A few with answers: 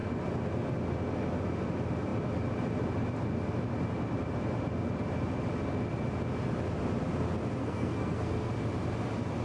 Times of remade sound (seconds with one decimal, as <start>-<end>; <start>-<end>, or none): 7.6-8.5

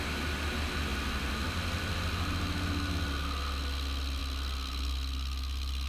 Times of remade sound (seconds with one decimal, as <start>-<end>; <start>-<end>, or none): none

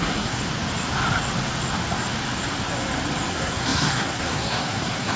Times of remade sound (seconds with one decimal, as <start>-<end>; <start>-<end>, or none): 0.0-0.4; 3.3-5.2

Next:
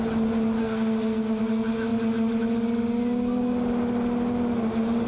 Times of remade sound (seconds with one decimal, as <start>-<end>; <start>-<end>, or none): 0.6-1.4

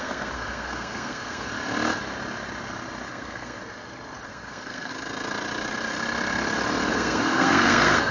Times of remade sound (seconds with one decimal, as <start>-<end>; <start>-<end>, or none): 0.0-1.5; 3.1-3.6; 4.3-4.9; 6.9-8.1